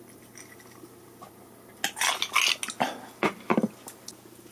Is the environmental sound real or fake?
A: real